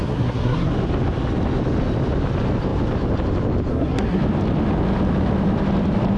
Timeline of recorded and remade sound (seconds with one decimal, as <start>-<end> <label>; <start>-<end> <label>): 0.0-0.7 remade; 0.7-3.7 recorded; 3.7-4.2 remade; 4.2-6.2 recorded

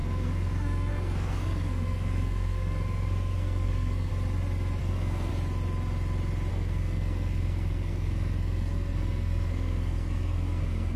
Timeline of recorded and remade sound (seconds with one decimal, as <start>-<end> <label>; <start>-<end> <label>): 0.0-4.1 remade; 4.1-4.8 recorded; 4.8-5.3 remade; 5.3-6.5 recorded; 6.5-11.0 remade

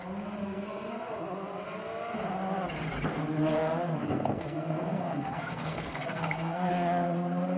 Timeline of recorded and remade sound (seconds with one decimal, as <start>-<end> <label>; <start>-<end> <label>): 0.0-0.4 recorded; 0.4-0.9 remade; 0.9-4.0 recorded; 4.0-6.7 remade; 6.7-7.6 recorded

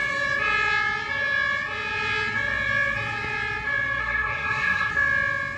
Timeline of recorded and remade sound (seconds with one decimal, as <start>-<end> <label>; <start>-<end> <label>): 0.0-4.0 recorded; 4.0-4.9 remade; 4.9-5.6 recorded

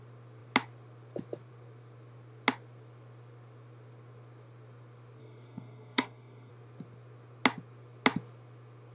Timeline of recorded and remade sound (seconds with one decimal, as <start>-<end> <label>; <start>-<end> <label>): 0.0-5.2 recorded; 5.2-6.5 remade; 6.5-8.9 recorded

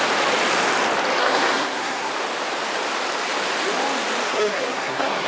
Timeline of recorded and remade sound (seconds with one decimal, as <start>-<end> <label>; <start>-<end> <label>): 0.0-1.2 recorded; 1.2-2.1 remade; 2.1-4.3 recorded; 4.3-5.3 remade

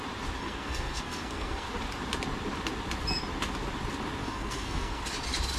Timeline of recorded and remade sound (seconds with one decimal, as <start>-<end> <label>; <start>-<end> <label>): 0.0-0.4 recorded; 0.4-1.7 remade; 1.7-4.2 recorded; 4.2-5.0 remade; 5.0-5.6 recorded